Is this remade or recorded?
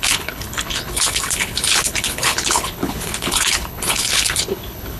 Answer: remade